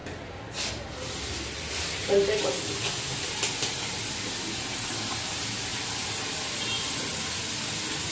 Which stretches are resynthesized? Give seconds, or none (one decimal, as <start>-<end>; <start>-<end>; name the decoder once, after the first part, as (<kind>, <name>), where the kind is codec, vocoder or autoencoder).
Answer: 5.7-6.6 (vocoder, BigVGAN v2)

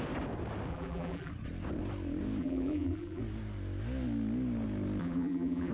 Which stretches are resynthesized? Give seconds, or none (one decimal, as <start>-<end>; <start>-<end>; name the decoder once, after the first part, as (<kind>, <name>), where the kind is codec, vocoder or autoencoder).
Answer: 0.7-1.3 (vocoder, BigVGAN v2); 2.4-3.2; 5.0-5.7

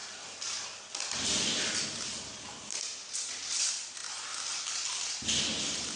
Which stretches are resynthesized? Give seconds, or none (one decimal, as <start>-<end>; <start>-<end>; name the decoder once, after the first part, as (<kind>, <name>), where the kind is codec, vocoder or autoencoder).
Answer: none

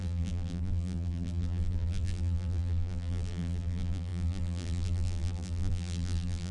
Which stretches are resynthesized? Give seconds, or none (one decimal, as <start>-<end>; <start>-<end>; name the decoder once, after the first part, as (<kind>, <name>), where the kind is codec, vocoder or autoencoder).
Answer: 0.0-6.5 (vocoder, BigVGAN v2)